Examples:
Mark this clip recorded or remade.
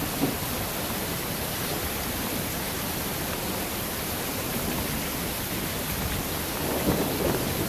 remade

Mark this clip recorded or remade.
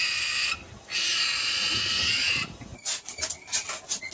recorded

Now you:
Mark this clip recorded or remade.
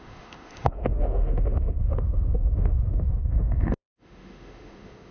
remade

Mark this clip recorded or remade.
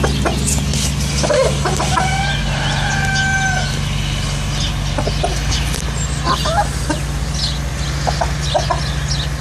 recorded